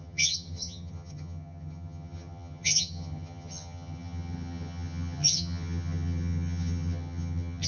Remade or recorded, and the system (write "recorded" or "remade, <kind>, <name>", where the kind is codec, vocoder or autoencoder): remade, vocoder, HiFi-GAN